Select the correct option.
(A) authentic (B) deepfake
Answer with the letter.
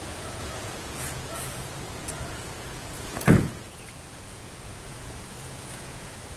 B